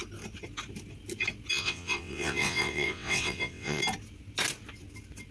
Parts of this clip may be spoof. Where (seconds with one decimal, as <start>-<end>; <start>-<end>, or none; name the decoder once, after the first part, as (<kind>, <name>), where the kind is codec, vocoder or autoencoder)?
1.5-3.8 (vocoder, WaveNeXt)